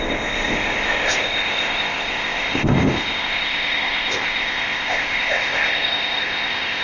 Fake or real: fake